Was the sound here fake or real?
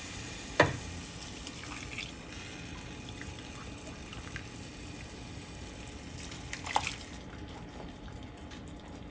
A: real